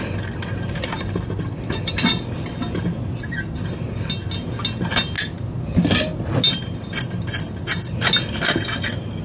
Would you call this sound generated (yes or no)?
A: no